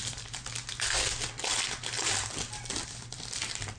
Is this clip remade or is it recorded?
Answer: recorded